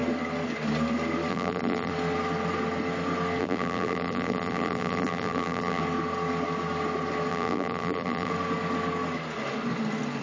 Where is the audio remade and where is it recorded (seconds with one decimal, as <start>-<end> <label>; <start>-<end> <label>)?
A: 0.0-1.3 recorded; 1.3-1.9 remade; 1.9-3.4 recorded; 3.4-5.8 remade; 5.8-7.3 recorded; 7.3-8.3 remade; 8.3-10.2 recorded